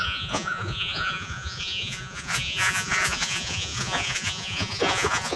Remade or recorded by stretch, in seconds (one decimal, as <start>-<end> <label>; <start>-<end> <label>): 0.0-5.4 remade